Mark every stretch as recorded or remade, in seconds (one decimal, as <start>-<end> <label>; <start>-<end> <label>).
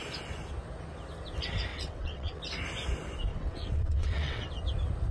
0.0-1.7 recorded; 1.7-2.4 remade; 2.4-3.3 recorded; 3.3-4.5 remade; 4.5-5.1 recorded